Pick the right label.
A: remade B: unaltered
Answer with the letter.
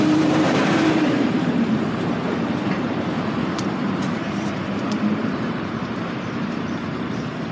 A